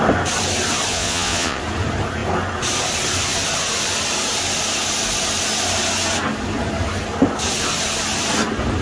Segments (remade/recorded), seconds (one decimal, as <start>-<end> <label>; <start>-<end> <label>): 0.0-0.9 recorded; 0.9-1.6 remade; 1.6-8.8 recorded